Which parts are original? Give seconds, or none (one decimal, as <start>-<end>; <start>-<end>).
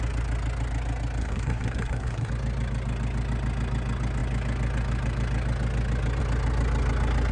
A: 0.0-1.2; 2.3-7.3